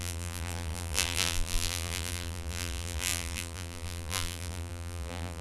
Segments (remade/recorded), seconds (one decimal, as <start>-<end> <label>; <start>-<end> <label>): 0.0-5.4 remade